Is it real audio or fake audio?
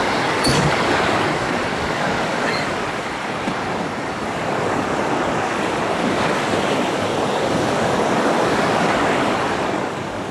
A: fake